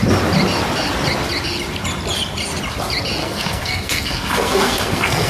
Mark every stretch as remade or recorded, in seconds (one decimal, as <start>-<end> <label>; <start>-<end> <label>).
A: 0.0-3.2 recorded; 3.2-5.3 remade